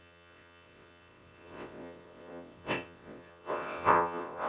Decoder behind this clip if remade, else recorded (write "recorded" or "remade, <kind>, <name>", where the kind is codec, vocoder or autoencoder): remade, vocoder, WaveNeXt